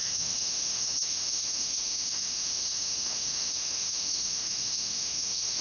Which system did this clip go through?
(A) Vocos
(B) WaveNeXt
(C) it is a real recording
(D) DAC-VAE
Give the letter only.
D